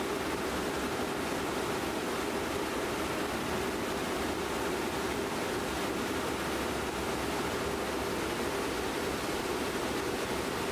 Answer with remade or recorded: recorded